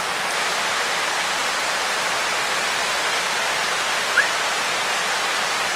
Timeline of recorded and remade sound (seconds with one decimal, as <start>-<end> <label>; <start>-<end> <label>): 0.0-5.8 recorded